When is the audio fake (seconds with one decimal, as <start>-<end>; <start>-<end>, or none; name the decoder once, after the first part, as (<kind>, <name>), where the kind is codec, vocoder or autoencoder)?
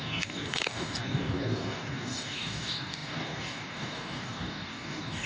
0.0-5.3 (codec, DAC)